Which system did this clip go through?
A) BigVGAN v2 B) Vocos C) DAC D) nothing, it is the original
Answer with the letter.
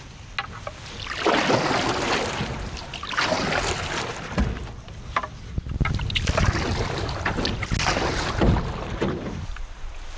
D